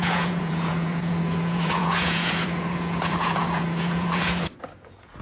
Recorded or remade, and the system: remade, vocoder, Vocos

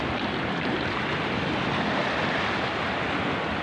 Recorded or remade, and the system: recorded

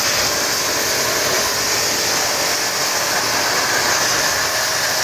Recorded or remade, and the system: recorded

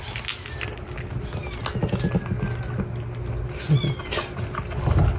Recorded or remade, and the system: recorded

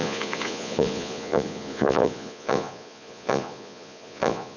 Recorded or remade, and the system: remade, vocoder, Vocos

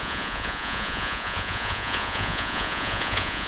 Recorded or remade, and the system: remade, vocoder, Vocos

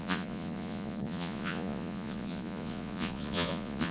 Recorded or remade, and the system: remade, vocoder, Vocos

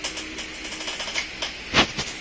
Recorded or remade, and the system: recorded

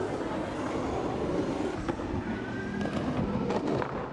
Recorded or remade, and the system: recorded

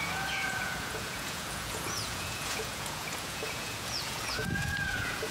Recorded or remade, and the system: remade, vocoder, Vocos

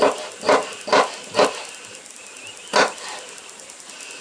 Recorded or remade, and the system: recorded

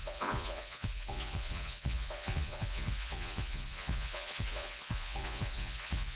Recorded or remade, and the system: remade, vocoder, Vocos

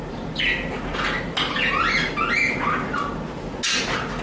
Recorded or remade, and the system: recorded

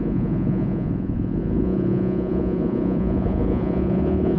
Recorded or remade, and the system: remade, vocoder, Vocos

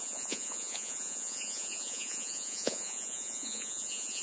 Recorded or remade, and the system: remade, vocoder, Vocos